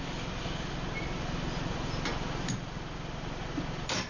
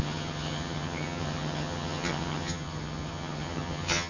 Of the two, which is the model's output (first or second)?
second